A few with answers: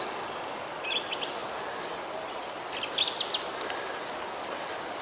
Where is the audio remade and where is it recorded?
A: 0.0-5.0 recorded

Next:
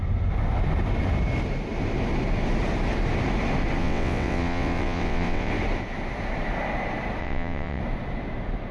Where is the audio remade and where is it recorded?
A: 0.0-3.8 recorded; 3.8-5.5 remade; 5.5-7.2 recorded; 7.2-7.8 remade; 7.8-8.7 recorded

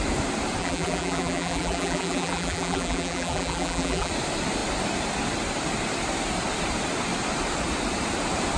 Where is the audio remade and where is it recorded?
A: 0.0-0.6 recorded; 0.6-4.1 remade; 4.1-8.6 recorded

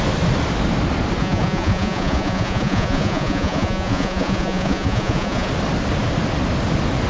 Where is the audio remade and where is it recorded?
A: 0.0-1.2 recorded; 1.2-5.5 remade; 5.5-7.1 recorded

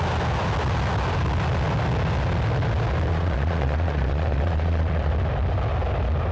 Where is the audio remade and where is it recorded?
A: 0.0-3.1 recorded; 3.1-5.1 remade; 5.1-6.3 recorded

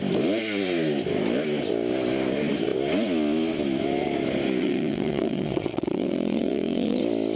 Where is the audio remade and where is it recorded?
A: 0.0-4.6 recorded; 4.6-7.0 remade; 7.0-7.4 recorded